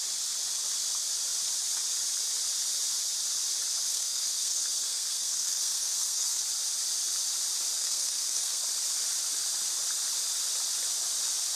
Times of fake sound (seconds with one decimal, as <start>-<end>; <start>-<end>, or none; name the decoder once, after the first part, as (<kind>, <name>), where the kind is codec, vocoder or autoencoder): 3.9-6.4 (codec, SNAC); 7.8-8.6